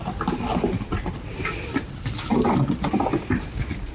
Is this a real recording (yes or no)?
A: yes